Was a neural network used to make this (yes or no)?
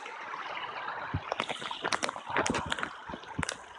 no